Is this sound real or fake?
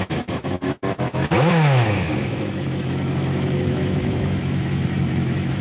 fake